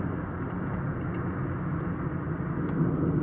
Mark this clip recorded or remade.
recorded